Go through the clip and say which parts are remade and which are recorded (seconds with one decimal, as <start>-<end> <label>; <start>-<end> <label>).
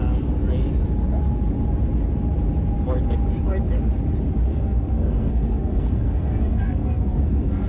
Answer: 0.0-4.5 recorded; 4.5-7.7 remade